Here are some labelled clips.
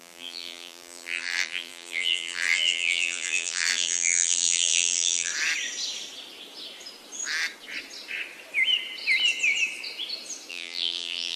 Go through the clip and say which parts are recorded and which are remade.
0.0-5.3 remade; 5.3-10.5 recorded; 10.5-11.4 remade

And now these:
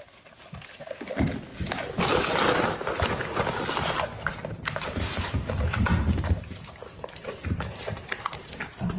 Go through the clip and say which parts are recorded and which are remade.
0.0-4.3 recorded; 4.3-5.5 remade; 5.5-7.2 recorded; 7.2-8.5 remade; 8.5-9.0 recorded

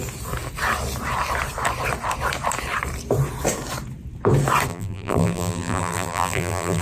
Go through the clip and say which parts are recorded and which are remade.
0.0-4.7 recorded; 4.7-6.8 remade

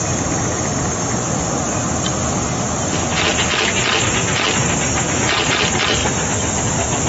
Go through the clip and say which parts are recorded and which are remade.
0.0-4.6 recorded; 4.6-5.6 remade; 5.6-6.0 recorded; 6.0-6.6 remade; 6.6-7.1 recorded

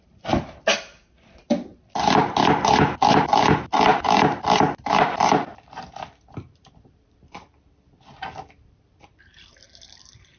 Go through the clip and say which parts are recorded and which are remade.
0.0-10.4 remade

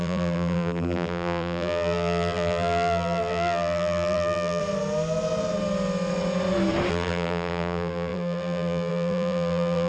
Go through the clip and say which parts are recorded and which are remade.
0.0-4.6 remade; 4.6-6.9 recorded; 6.9-9.9 remade

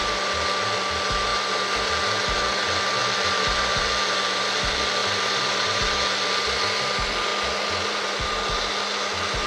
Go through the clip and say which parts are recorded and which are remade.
0.0-1.3 recorded; 1.3-1.8 remade; 1.8-5.0 recorded; 5.0-5.8 remade; 5.8-7.3 recorded; 7.3-8.6 remade; 8.6-9.5 recorded

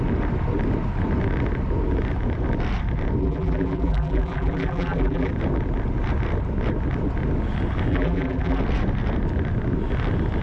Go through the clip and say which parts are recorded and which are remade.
0.0-3.2 recorded; 3.2-5.3 remade; 5.3-7.9 recorded; 7.9-8.6 remade; 8.6-10.4 recorded